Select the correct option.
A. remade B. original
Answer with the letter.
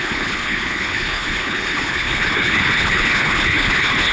A